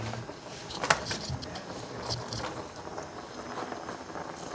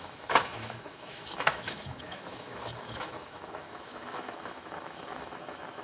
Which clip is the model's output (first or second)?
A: second